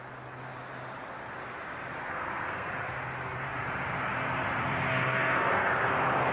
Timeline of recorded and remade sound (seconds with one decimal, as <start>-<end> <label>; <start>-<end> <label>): 0.0-2.0 recorded; 2.0-2.7 remade; 2.7-4.9 recorded; 4.9-5.7 remade; 5.7-6.3 recorded